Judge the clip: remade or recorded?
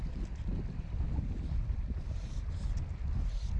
recorded